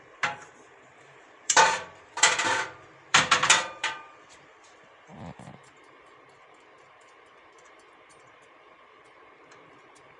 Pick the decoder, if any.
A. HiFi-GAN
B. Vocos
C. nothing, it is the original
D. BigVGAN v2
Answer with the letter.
D